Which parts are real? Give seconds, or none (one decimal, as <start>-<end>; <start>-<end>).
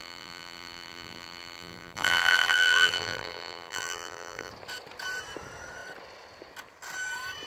4.5-7.5